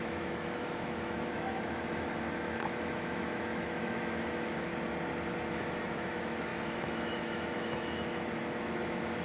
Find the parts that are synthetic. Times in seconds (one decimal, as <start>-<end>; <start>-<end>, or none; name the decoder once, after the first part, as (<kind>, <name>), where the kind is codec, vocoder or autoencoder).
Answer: 0.0-4.7 (autoencoder, DAC-VAE); 5.5-9.2